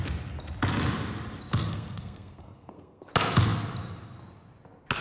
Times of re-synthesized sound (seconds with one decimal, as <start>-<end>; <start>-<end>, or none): 1.6-3.1

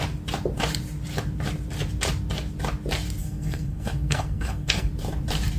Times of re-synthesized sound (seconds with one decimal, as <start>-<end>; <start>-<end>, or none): 3.2-4.9

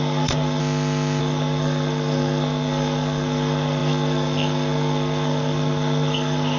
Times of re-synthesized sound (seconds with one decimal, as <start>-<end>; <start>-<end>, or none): 0.0-0.6; 1.2-6.6

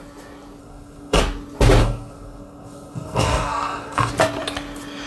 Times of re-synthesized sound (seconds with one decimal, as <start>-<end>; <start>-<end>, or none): 0.6-1.2; 1.8-4.1

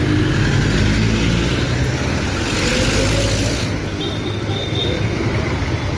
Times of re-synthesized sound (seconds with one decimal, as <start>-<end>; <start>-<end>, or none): none

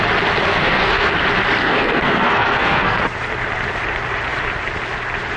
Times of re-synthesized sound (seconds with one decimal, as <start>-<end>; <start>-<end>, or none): 0.5-1.1; 1.6-3.0

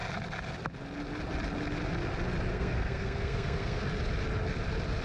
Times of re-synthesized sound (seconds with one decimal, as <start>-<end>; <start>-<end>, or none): 2.5-3.8